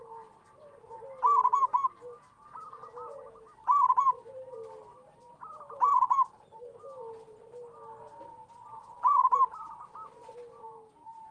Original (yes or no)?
yes